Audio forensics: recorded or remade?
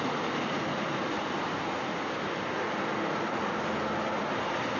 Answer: recorded